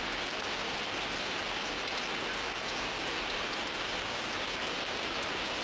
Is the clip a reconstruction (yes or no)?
no